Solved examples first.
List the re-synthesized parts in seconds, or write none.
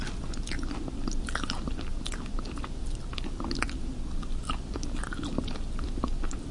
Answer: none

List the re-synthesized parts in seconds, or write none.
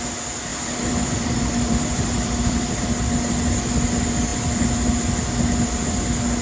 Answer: 0.5-2.9 (vocoder, BigVGAN v2)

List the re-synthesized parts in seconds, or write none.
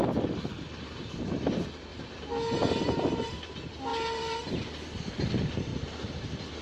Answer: 1.9-3.3 (vocoder, BigVGAN v2); 3.9-4.5; 5.7-6.6